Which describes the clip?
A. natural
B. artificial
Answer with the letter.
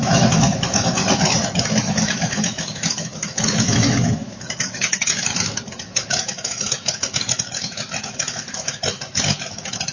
B